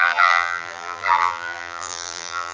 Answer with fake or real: fake